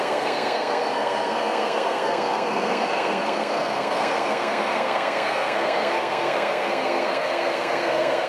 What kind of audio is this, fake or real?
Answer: fake